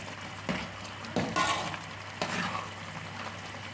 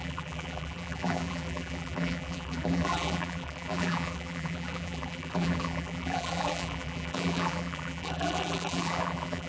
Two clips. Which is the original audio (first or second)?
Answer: first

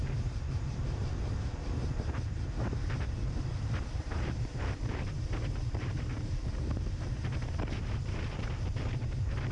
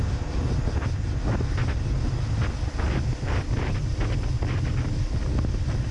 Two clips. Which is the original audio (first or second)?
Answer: second